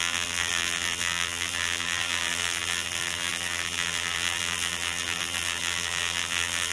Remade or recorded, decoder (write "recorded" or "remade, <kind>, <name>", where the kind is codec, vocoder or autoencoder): remade, vocoder, BigVGAN v2